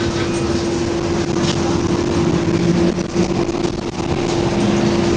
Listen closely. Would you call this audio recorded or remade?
recorded